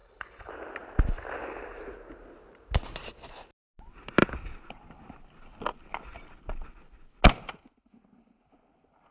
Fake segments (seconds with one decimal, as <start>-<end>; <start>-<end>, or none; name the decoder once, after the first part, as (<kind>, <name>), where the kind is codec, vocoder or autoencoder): 0.0-0.5 (codec, HILCodec)